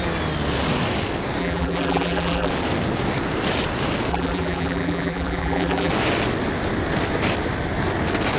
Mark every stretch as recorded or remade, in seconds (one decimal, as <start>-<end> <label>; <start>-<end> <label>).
0.0-1.4 recorded; 1.4-2.5 remade; 2.5-4.1 recorded; 4.1-5.9 remade; 5.9-8.4 recorded

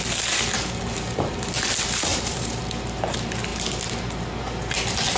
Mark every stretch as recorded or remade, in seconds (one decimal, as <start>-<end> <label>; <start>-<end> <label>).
0.0-2.1 recorded; 2.1-2.6 remade; 2.6-5.2 recorded

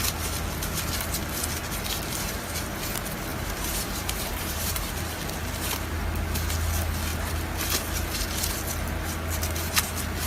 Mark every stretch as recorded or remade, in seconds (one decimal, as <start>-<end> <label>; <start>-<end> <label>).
0.0-3.3 recorded; 3.3-5.0 remade; 5.0-10.3 recorded

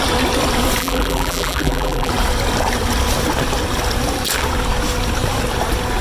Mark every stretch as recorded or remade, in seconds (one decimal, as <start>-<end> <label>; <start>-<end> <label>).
0.0-0.8 recorded; 0.8-2.1 remade; 2.1-6.0 recorded

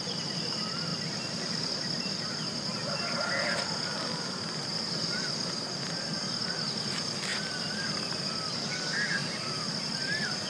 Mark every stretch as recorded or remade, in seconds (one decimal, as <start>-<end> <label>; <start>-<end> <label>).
0.0-9.2 recorded; 9.2-9.7 remade; 9.7-10.5 recorded